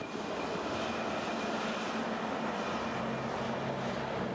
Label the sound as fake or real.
real